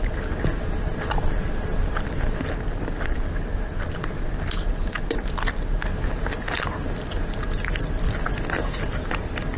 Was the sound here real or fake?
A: real